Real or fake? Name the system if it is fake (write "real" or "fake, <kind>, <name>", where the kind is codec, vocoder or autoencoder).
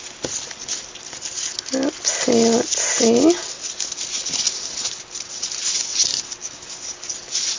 real